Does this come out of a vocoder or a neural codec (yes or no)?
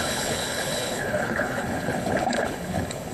yes